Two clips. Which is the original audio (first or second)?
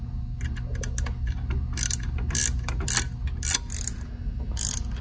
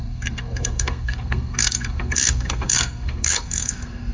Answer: first